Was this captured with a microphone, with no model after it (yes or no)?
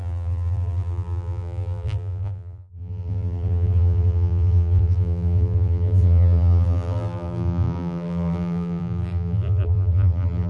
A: no